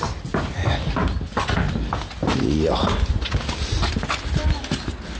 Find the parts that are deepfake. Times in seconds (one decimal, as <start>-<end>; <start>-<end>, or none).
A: 2.2-3.1